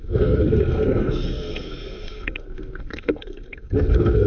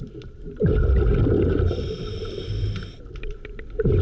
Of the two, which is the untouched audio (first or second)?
second